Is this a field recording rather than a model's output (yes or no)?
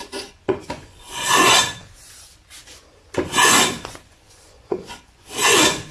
no